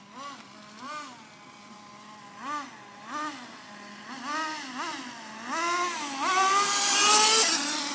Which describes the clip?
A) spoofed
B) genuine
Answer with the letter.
B